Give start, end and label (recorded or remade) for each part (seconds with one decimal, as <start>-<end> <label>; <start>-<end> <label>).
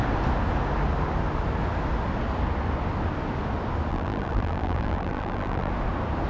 0.0-3.9 recorded; 3.9-5.7 remade; 5.7-6.3 recorded